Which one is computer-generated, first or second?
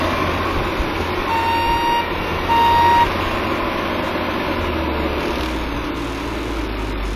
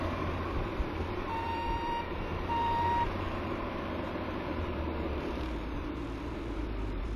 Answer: second